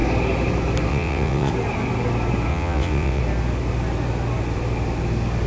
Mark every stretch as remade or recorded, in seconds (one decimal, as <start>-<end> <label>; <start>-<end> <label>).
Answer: 0.0-0.9 recorded; 0.9-1.5 remade; 1.5-2.5 recorded; 2.5-3.2 remade; 3.2-5.5 recorded